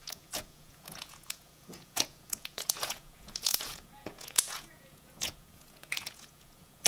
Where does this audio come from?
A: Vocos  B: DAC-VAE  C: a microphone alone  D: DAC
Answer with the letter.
A